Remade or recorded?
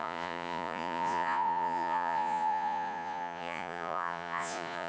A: remade